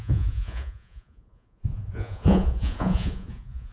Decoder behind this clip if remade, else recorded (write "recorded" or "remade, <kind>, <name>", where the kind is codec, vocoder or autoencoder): remade, vocoder, Vocos